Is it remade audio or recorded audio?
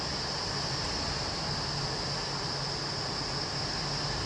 recorded